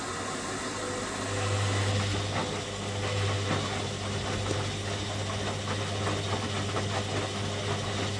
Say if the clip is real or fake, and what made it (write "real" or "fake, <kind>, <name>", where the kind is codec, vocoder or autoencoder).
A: real